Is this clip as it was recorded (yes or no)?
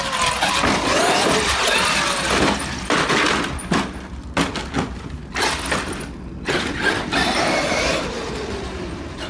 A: yes